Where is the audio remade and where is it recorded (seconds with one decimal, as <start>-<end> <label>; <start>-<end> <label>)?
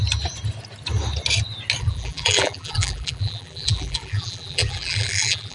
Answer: 0.0-1.8 recorded; 1.8-5.5 remade